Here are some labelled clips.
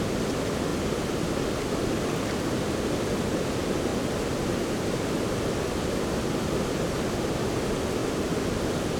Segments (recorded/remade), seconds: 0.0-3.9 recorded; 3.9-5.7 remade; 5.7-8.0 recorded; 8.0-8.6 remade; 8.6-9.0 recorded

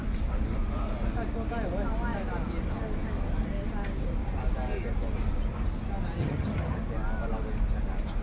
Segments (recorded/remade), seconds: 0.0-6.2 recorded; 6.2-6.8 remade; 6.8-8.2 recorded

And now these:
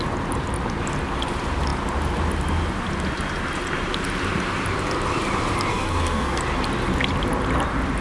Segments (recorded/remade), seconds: 0.0-5.7 recorded; 5.7-6.4 remade; 6.4-8.0 recorded